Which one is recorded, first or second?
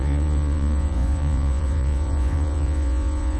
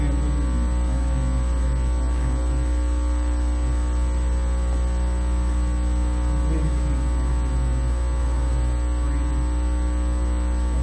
second